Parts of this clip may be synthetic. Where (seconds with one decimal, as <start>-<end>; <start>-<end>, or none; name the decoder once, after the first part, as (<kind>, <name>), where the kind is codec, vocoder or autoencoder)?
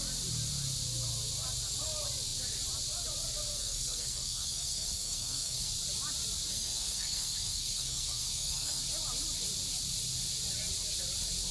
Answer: 3.5-5.7 (codec, SNAC); 6.5-8.8